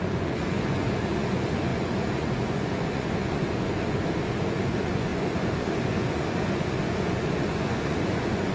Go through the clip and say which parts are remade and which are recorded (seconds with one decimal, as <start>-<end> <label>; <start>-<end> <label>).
0.0-8.5 remade